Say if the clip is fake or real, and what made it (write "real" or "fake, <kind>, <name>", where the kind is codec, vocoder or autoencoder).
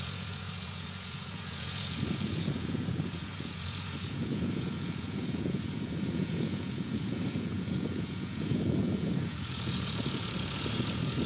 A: fake, vocoder, Vocos